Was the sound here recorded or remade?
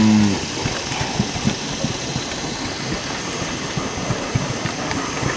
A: recorded